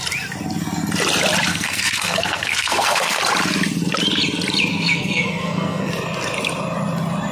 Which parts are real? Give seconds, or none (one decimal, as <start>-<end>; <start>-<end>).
0.0-1.5; 3.2-4.7; 5.9-7.3